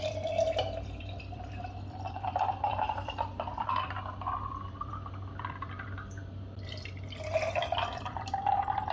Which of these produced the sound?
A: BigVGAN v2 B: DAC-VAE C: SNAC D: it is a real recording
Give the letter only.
A